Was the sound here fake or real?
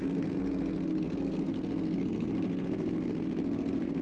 fake